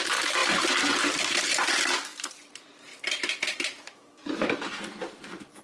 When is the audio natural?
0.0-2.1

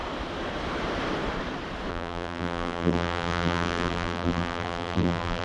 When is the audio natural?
0.0-1.9

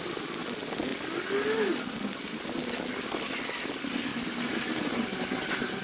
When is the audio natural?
0.0-4.1

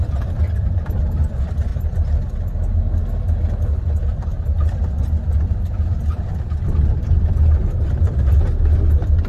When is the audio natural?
0.0-4.3; 4.8-9.3